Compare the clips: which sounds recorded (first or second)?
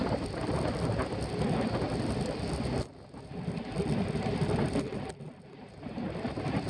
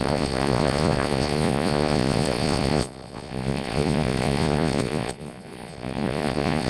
first